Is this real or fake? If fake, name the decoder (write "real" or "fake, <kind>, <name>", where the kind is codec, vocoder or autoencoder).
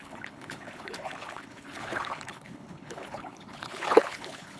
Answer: fake, codec, HILCodec